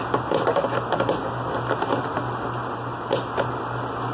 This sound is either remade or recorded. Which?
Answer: recorded